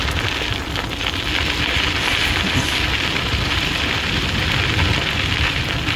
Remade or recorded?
recorded